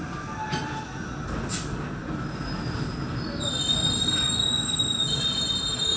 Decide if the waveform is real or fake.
real